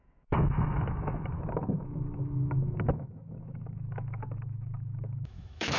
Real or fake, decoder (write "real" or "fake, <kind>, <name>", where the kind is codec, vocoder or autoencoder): fake, autoencoder, DAC-VAE